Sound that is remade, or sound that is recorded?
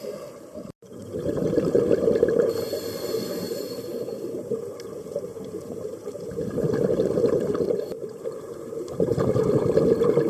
remade